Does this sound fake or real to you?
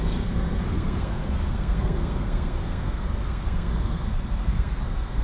fake